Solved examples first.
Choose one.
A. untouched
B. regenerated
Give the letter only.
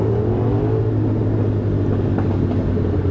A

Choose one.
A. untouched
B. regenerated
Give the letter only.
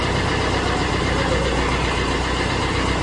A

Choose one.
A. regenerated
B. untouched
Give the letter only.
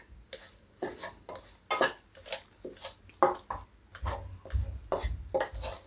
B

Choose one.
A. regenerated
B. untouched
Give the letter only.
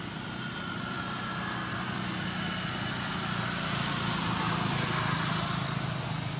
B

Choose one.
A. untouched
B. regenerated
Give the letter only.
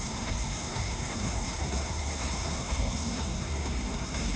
B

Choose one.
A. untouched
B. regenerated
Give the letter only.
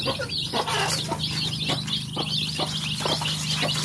A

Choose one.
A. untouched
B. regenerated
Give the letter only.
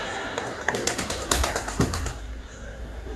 B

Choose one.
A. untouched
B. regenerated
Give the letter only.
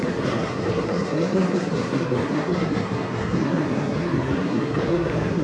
B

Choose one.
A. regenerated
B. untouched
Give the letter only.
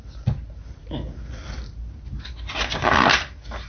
B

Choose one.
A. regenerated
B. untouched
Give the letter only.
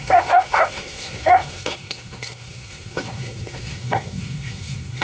A